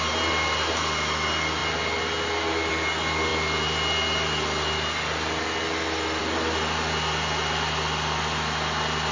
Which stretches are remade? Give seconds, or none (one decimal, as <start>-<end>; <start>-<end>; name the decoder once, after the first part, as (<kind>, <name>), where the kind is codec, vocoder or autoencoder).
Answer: none